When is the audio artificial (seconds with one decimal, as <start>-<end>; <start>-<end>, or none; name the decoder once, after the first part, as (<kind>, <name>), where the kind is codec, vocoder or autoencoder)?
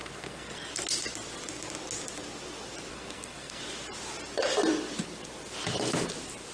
0.0-0.7 (codec, SNAC); 2.9-3.6